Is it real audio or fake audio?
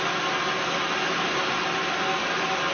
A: real